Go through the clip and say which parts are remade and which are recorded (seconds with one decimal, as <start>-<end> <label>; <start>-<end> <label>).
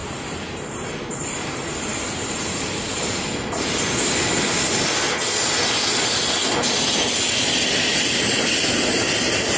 0.0-3.2 remade; 3.2-9.6 recorded